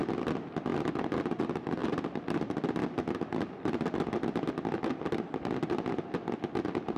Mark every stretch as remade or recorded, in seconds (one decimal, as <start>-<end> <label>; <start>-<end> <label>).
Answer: 0.0-0.7 recorded; 0.7-1.4 remade; 1.4-1.8 recorded; 1.8-4.4 remade; 4.4-7.0 recorded